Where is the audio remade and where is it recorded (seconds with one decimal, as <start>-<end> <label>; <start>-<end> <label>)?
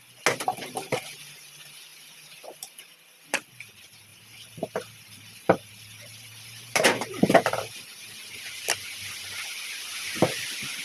0.0-1.9 recorded; 1.9-3.2 remade; 3.2-4.1 recorded; 4.1-7.6 remade; 7.6-10.8 recorded